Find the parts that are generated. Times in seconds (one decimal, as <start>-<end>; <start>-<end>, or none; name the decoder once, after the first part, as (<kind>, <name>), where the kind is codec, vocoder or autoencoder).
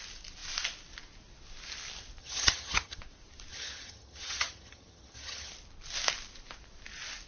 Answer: 2.2-3.0 (vocoder, HiFi-GAN); 3.5-5.5